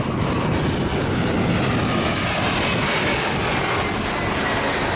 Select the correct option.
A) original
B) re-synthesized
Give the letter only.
A